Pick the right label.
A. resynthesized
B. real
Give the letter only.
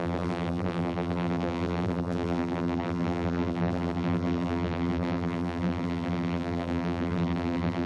A